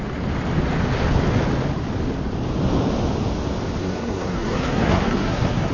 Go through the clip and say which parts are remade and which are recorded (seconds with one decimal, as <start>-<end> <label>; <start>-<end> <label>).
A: 0.0-3.8 recorded; 3.8-5.7 remade